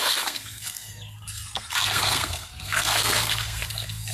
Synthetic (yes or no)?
yes